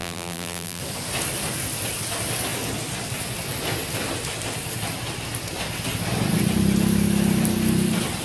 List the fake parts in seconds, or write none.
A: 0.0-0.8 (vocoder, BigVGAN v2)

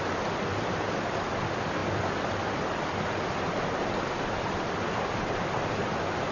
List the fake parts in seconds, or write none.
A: none

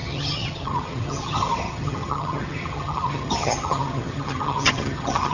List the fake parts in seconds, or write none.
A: 0.0-5.3 (vocoder, HiFi-GAN)

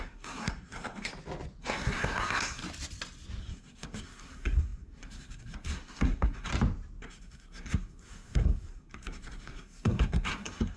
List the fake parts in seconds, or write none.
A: 0.0-1.1 (codec, SNAC); 1.6-2.6; 3.4-6.5; 7.0-10.8

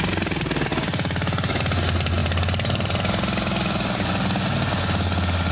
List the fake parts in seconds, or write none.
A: none

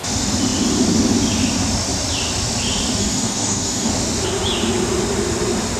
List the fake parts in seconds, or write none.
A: 3.0-3.9 (codec, DAC)

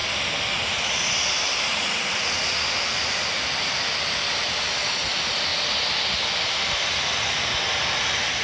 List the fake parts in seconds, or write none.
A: none

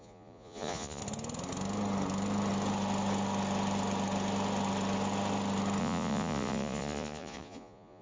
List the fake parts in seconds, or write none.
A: 0.0-1.0 (vocoder, Vocos); 5.8-8.0